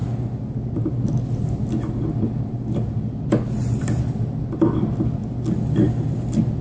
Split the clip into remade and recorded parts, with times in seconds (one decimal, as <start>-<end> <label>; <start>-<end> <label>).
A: 0.0-6.6 recorded